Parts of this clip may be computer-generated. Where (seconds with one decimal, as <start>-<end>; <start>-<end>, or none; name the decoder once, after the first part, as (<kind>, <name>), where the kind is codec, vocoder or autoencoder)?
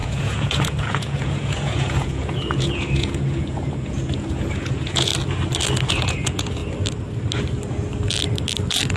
0.0-5.1 (vocoder, Vocos); 5.9-6.6